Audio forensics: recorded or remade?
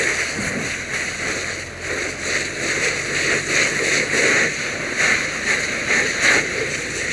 recorded